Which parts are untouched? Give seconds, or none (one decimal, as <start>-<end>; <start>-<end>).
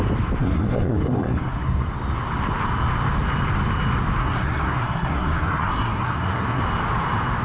0.0-0.4; 1.9-4.2; 6.6-7.4